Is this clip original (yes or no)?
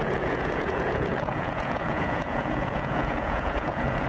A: no